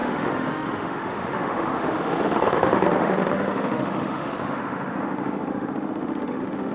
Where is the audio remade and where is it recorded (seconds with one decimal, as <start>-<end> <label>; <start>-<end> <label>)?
0.0-6.7 remade